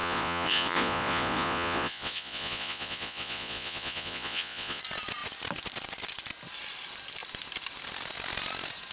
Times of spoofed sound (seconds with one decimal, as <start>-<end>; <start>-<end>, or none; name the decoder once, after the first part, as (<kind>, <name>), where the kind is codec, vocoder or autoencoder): 0.0-4.8 (vocoder, Vocos)